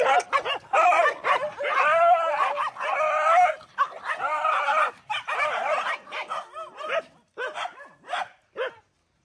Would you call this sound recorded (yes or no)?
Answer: yes